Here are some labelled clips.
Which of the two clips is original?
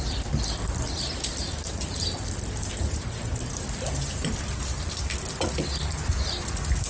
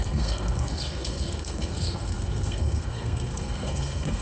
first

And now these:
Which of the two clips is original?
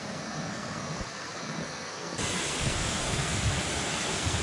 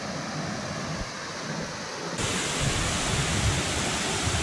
second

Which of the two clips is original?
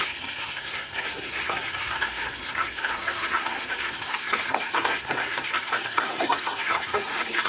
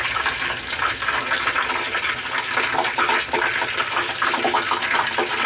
second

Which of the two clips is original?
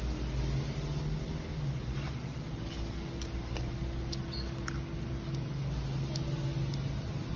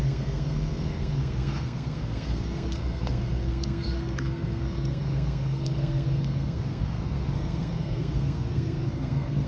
first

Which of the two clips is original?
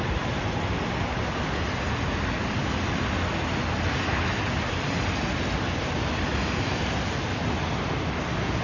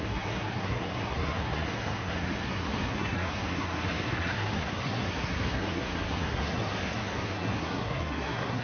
first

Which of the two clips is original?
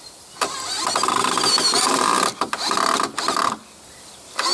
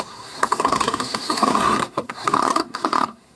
first